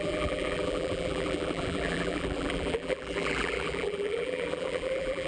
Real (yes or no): no